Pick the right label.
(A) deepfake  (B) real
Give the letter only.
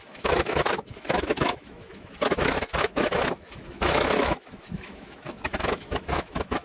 A